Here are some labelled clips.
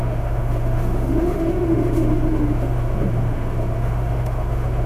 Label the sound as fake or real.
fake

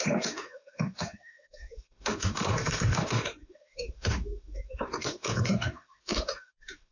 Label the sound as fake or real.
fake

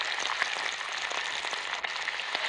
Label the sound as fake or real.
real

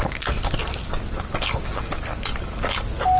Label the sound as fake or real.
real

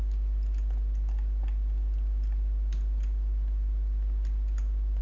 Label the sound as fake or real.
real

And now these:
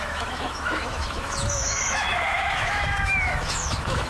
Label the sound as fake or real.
fake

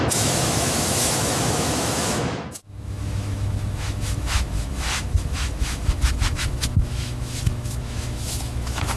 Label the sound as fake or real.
fake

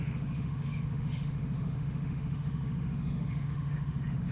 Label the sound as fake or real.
fake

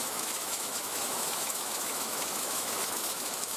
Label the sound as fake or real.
fake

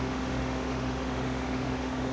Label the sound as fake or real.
fake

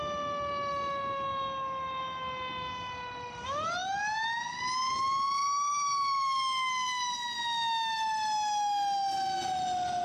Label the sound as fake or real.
real